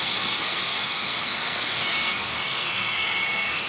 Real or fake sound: fake